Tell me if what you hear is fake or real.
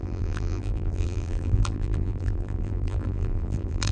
fake